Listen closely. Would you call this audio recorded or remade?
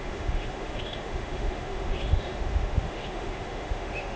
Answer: remade